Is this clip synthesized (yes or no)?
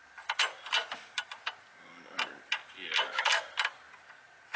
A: no